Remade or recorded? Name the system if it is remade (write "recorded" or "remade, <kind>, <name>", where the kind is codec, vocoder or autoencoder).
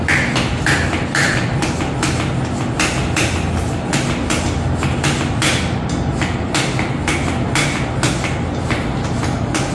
recorded